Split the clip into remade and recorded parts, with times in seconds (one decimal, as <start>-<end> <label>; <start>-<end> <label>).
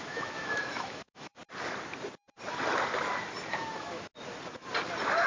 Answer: 0.0-1.4 remade; 1.4-3.5 recorded; 3.5-4.1 remade; 4.1-5.3 recorded